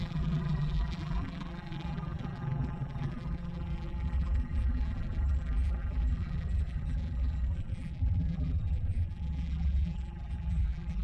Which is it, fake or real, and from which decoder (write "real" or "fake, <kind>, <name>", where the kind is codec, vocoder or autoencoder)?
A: fake, vocoder, BigVGAN v2